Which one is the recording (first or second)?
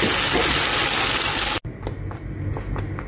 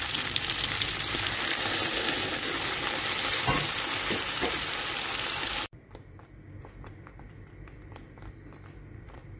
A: first